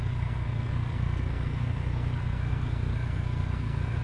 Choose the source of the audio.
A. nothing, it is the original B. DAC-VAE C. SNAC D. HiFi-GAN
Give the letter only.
C